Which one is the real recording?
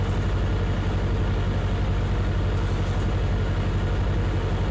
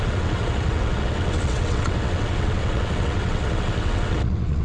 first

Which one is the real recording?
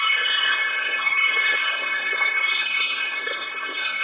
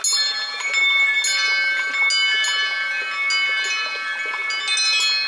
second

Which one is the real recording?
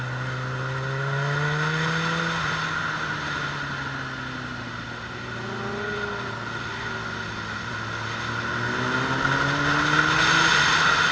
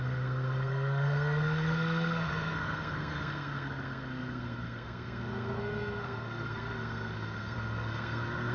first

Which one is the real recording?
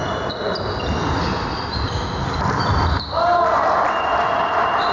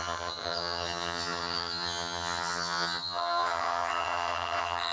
first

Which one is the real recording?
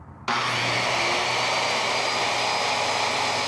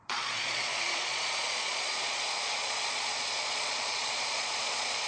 first